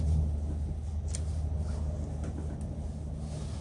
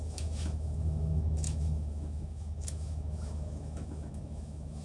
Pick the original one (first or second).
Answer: first